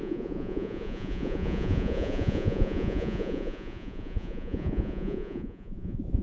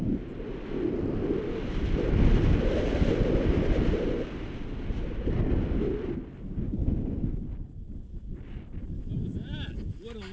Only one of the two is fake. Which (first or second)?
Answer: first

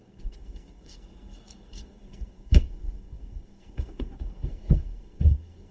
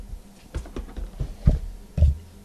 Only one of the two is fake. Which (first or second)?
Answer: first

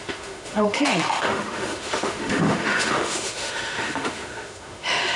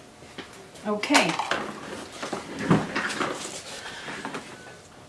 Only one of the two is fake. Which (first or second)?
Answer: first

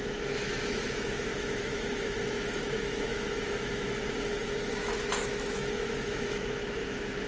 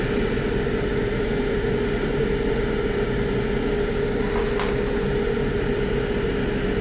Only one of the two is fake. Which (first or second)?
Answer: first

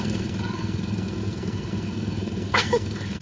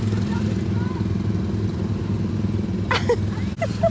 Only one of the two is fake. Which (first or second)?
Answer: first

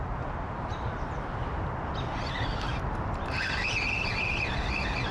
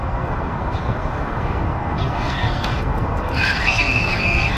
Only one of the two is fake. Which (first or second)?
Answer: second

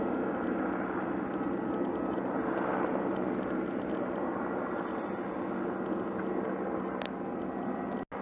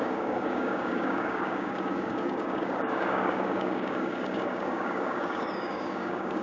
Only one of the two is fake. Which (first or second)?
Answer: second